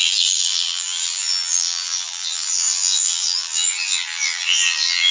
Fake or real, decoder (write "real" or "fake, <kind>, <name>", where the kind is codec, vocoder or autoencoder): fake, vocoder, BigVGAN v2